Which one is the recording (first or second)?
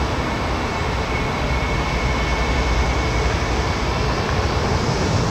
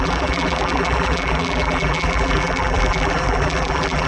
first